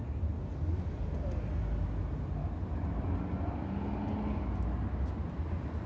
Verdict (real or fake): real